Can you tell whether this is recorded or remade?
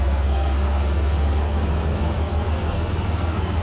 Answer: remade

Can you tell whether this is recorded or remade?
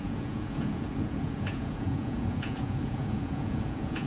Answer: remade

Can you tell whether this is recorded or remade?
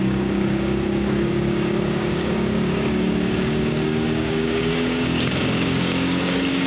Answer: remade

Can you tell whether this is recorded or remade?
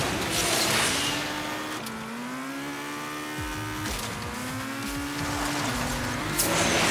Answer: recorded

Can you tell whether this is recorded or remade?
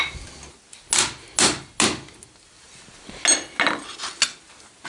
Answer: recorded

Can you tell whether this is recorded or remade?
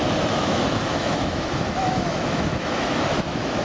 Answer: remade